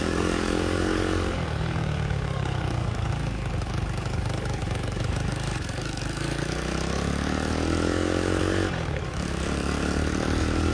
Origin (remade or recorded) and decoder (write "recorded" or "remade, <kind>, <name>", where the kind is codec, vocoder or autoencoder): remade, codec, DAC